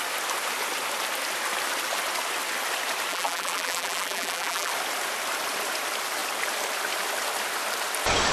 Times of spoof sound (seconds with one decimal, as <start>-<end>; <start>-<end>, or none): 3.1-4.7